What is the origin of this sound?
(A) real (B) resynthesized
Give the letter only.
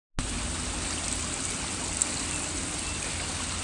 A